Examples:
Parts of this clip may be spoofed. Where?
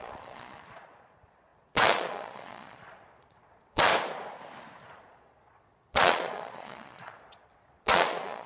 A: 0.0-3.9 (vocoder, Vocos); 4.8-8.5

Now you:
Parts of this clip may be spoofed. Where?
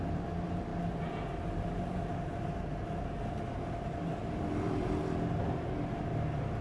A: 4.1-5.0 (vocoder, BigVGAN v2)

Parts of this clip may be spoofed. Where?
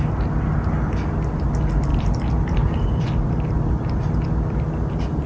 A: 1.9-5.3 (vocoder, BigVGAN v2)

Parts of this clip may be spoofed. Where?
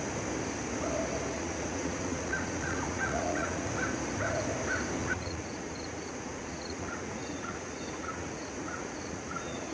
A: 1.3-3.7 (vocoder, Vocos); 5.0-9.7